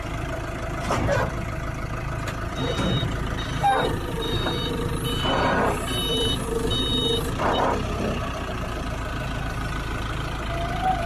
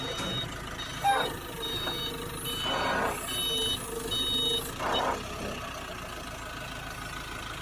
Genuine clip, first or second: second